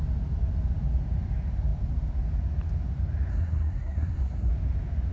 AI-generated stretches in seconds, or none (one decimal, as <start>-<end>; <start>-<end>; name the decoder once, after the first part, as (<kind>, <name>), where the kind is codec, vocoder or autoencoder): 3.3-4.5 (codec, SNAC)